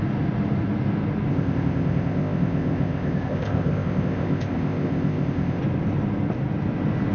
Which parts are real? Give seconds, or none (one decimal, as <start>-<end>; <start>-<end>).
0.0-1.3; 5.6-7.1